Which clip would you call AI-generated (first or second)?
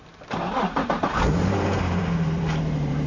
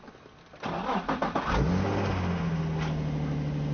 first